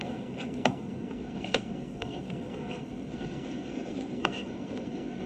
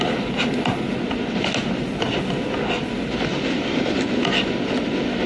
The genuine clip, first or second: second